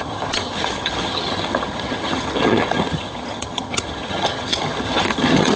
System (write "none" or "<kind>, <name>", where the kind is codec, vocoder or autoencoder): vocoder, HiFi-GAN